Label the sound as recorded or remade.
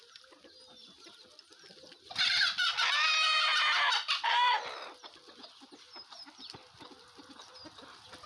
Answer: recorded